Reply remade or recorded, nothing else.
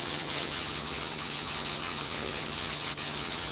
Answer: remade